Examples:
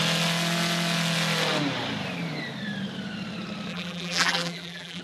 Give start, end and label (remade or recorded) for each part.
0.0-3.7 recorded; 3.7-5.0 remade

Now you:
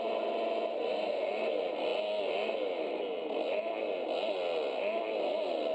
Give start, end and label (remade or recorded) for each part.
0.0-5.7 recorded

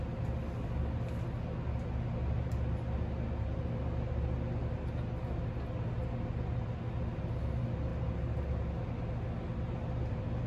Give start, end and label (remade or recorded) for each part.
0.0-10.5 recorded